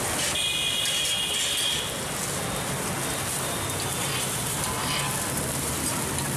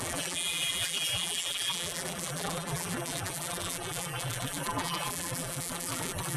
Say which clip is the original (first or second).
first